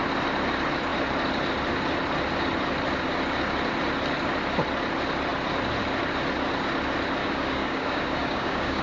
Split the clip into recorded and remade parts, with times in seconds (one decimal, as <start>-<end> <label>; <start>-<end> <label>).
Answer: 0.0-7.2 recorded; 7.2-8.8 remade